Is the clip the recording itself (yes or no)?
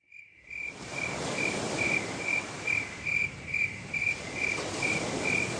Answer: no